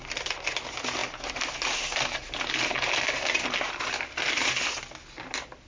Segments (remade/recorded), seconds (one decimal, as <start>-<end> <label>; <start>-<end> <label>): 0.0-5.7 recorded